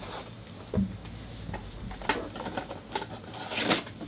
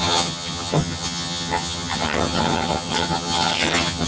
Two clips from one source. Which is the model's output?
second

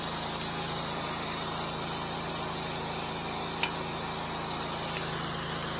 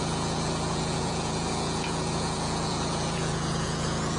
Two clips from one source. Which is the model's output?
second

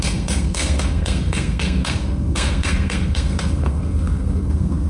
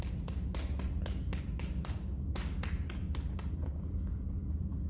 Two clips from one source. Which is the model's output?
first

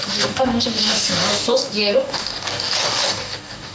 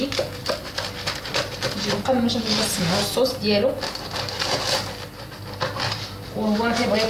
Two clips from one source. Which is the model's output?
first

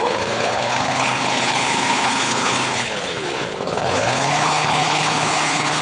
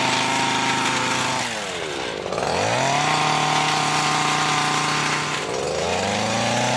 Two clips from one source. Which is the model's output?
first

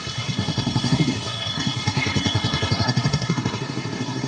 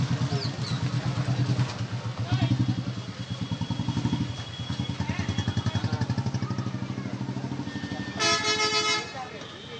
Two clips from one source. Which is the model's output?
first